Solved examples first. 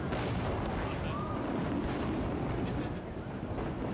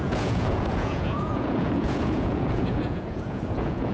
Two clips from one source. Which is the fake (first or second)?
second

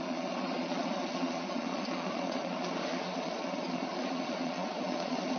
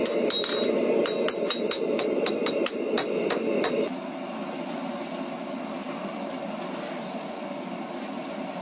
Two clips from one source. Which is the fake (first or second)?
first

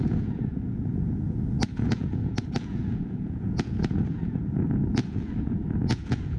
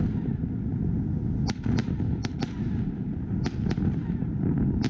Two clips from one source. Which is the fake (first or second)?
first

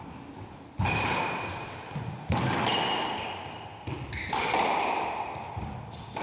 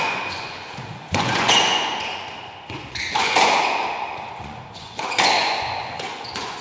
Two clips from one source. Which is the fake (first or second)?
second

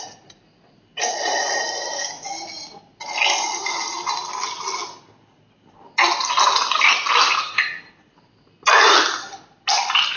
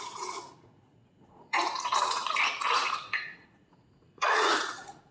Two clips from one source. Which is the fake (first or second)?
second